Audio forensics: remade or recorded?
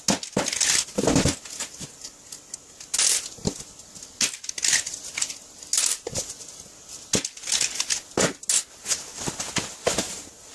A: recorded